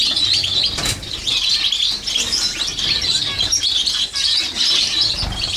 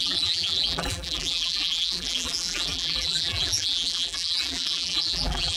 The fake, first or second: second